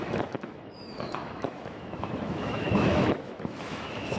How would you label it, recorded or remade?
remade